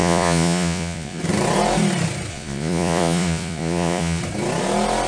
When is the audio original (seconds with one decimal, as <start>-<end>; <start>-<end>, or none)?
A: 1.2-2.3; 4.2-5.1